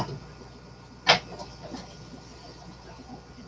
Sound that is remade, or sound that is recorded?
recorded